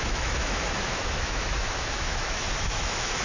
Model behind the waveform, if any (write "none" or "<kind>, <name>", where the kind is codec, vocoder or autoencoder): autoencoder, DAC-VAE